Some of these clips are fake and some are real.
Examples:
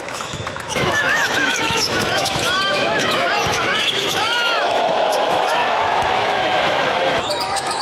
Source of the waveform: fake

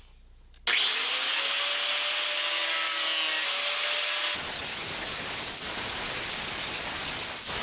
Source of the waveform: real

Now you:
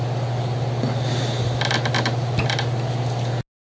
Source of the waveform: real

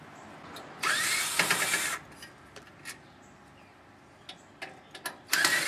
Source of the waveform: real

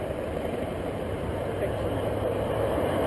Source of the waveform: fake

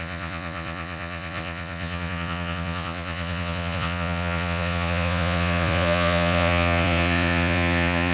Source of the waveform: fake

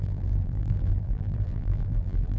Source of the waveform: fake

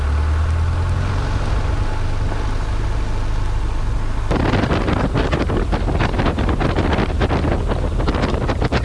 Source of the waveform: real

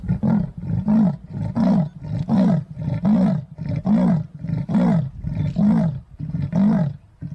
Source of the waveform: real